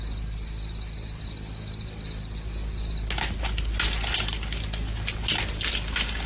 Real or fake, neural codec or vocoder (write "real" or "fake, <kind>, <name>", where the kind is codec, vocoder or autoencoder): real